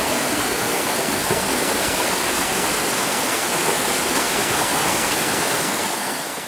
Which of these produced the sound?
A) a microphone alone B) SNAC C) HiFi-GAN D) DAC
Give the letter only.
B